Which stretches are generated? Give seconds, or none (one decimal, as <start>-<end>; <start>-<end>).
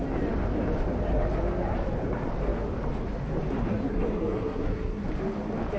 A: 3.9-5.1